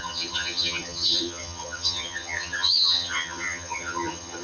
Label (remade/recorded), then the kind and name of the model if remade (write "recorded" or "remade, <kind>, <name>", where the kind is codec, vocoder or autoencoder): remade, vocoder, HiFi-GAN